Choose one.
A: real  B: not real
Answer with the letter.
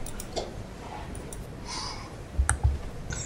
A